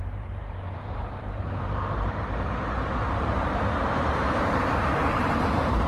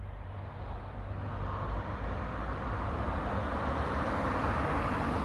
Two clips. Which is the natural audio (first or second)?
second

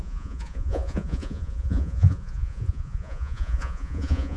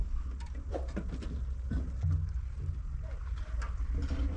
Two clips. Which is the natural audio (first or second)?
second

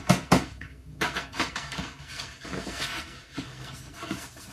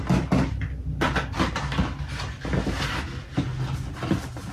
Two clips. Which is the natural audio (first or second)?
second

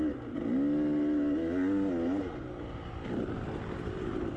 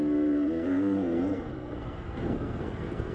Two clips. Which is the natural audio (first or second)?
first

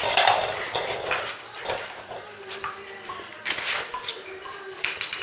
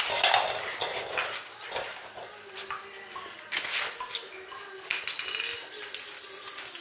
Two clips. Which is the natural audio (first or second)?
second